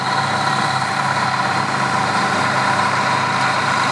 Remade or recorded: remade